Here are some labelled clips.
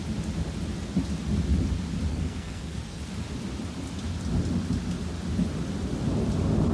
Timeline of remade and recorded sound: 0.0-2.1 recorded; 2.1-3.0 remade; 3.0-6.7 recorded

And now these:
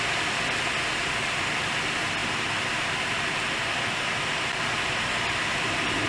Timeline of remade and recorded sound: 0.0-6.1 recorded

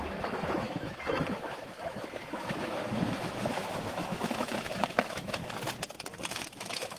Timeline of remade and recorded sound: 0.0-5.4 remade; 5.4-6.2 recorded; 6.2-7.0 remade

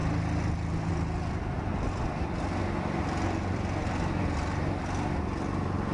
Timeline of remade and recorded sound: 0.0-5.9 recorded